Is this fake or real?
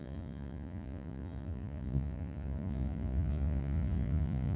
fake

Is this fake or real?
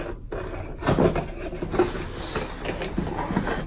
real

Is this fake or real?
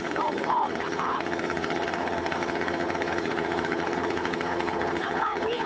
fake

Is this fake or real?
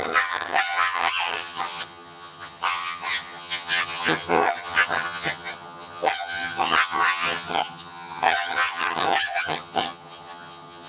fake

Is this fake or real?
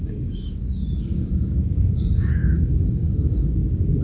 fake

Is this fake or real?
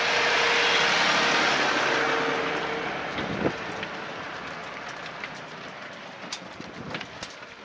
real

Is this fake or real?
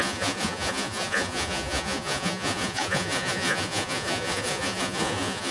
fake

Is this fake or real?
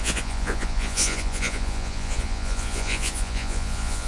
fake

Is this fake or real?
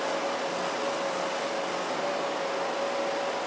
real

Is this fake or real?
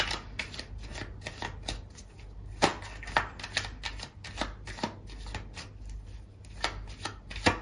real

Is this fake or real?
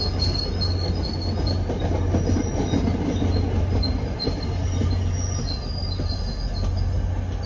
real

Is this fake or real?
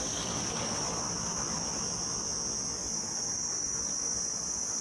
real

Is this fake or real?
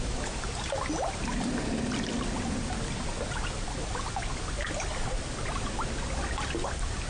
real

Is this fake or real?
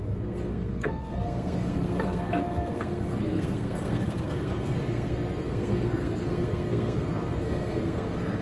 fake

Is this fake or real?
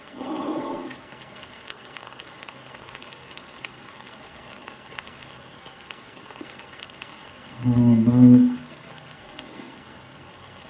fake